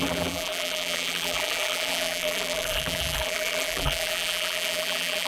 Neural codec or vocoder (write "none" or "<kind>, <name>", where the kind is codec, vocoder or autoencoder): vocoder, BigVGAN v2